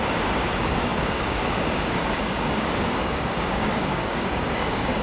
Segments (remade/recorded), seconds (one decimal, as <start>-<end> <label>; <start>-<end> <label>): 0.0-5.0 remade